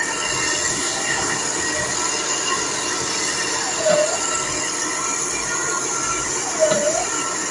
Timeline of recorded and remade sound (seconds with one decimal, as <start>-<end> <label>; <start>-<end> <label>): 0.0-0.7 recorded; 0.7-1.4 remade; 1.4-7.5 recorded

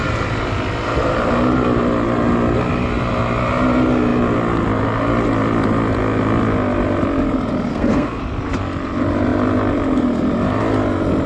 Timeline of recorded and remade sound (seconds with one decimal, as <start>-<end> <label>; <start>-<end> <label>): 0.0-7.7 recorded; 7.7-8.2 remade; 8.2-11.3 recorded

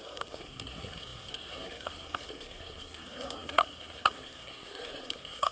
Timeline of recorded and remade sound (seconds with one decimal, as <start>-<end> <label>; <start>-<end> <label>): 0.0-5.5 remade

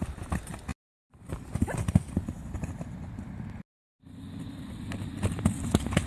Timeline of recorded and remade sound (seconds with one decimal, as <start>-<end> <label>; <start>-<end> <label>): 0.0-6.1 recorded